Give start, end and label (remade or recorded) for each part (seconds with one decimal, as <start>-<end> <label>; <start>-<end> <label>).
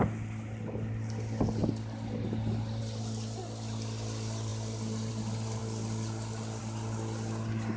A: 0.0-7.8 recorded